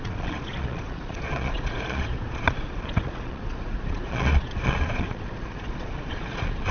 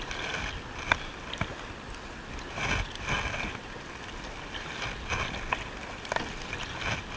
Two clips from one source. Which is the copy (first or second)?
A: first